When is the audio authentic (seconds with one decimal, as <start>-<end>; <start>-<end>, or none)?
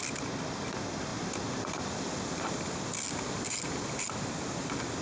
0.0-5.0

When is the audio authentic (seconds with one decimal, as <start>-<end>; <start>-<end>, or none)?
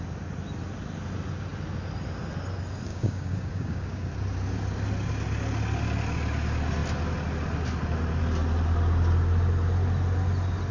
0.0-2.9; 4.1-10.7